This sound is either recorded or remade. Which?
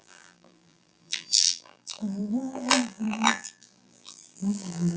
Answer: remade